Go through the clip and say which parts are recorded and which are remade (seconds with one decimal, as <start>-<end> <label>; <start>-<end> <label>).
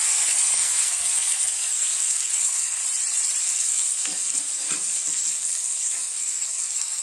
0.0-2.8 remade; 2.8-3.4 recorded; 3.4-7.0 remade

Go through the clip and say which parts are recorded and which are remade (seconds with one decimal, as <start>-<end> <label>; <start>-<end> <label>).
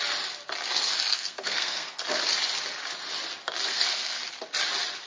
0.0-1.1 recorded; 1.1-2.0 remade; 2.0-3.7 recorded; 3.7-4.2 remade; 4.2-5.1 recorded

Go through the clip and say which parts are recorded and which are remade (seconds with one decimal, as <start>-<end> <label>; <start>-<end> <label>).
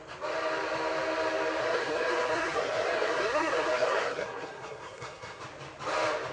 0.0-1.6 recorded; 1.6-5.4 remade; 5.4-6.3 recorded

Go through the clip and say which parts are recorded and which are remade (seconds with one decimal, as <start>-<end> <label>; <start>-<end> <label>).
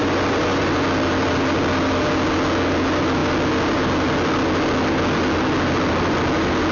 0.0-6.7 recorded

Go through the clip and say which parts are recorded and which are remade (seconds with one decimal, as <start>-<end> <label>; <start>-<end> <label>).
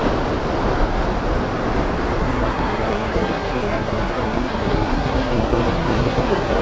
0.0-2.2 recorded; 2.2-6.6 remade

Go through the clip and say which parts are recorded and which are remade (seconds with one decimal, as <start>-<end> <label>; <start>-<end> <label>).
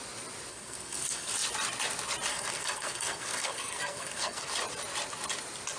0.0-0.5 recorded; 0.5-1.3 remade; 1.3-2.3 recorded; 2.3-4.5 remade; 4.5-5.8 recorded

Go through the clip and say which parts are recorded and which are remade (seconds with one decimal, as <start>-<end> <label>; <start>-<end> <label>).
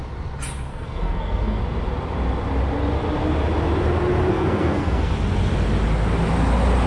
0.0-0.7 recorded; 0.7-1.6 remade; 1.6-4.3 recorded; 4.3-5.1 remade; 5.1-6.9 recorded